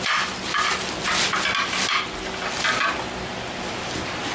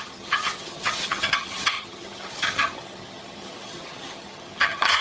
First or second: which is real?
first